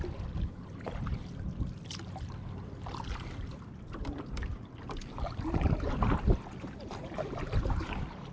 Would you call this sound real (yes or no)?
yes